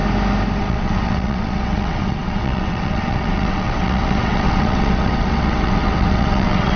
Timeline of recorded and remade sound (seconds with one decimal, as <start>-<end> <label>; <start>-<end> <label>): 0.0-0.6 recorded; 0.6-6.8 remade